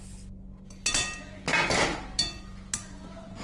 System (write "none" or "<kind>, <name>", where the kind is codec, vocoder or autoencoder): none